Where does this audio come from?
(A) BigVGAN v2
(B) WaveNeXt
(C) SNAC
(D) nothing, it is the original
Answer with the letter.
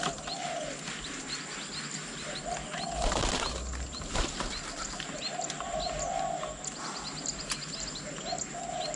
D